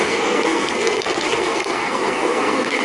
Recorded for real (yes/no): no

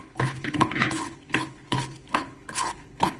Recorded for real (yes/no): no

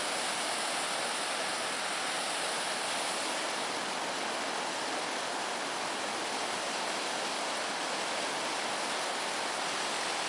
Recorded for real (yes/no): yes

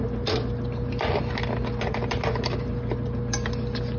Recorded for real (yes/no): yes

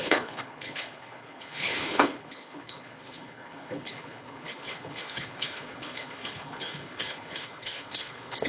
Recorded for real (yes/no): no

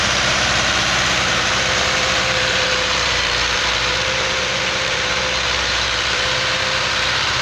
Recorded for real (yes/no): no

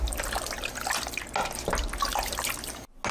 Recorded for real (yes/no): yes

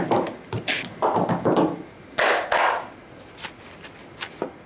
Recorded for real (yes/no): yes